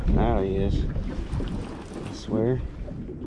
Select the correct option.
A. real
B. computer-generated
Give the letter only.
A